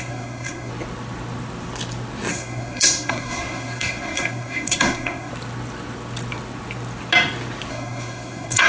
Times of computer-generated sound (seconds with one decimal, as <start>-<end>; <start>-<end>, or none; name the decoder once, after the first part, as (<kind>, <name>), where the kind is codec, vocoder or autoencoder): 0.0-0.7 (codec, SNAC); 2.3-5.3; 7.7-8.7